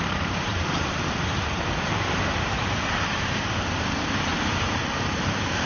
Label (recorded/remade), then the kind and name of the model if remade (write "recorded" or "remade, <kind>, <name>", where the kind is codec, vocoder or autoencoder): remade, vocoder, BigVGAN v2